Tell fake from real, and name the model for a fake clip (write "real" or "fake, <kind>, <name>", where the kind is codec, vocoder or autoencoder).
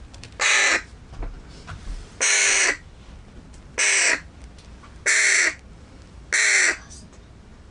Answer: real